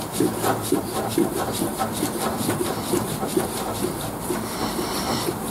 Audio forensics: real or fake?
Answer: fake